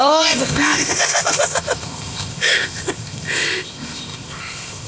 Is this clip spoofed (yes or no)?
yes